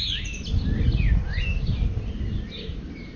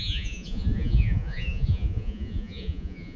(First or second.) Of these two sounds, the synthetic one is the second